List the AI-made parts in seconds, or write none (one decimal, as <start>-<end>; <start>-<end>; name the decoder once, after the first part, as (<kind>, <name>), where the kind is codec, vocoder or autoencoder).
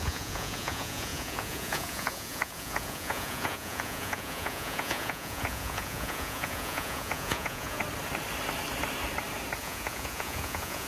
0.0-7.8 (vocoder, Vocos); 9.6-10.9